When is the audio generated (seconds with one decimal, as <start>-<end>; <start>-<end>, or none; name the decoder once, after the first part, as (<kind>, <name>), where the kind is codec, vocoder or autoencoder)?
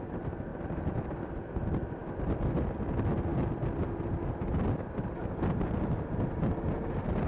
none